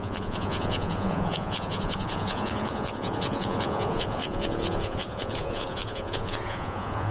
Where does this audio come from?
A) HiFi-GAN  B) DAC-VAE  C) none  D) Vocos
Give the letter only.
D